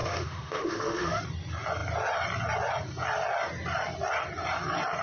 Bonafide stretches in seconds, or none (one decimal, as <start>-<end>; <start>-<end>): 1.2-5.0